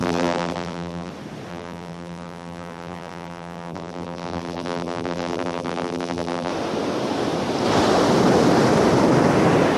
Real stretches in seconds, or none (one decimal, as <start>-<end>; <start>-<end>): 1.1-1.5; 6.5-9.8